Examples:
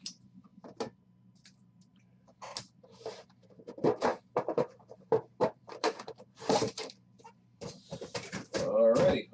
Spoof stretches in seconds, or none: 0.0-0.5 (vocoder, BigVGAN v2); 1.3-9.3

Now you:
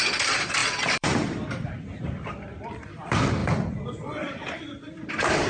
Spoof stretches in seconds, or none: 0.0-5.5 (vocoder, BigVGAN v2)

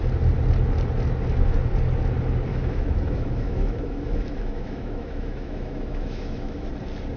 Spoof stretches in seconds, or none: 2.5-6.7 (autoencoder, DAC-VAE)

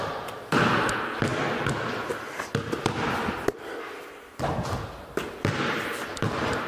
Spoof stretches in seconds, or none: 0.0-1.3 (vocoder, BigVGAN v2); 5.3-6.7

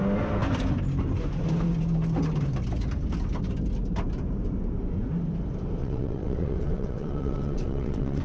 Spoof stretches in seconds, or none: 5.8-8.2 (vocoder, WaveNeXt)

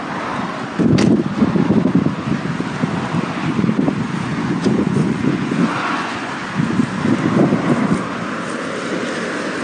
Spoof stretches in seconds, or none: 4.3-6.3 (vocoder, Vocos)

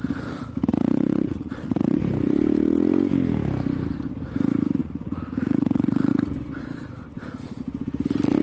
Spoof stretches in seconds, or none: 0.7-2.0 (vocoder, Vocos); 4.8-6.1